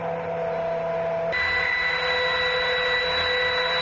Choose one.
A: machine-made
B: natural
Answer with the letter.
B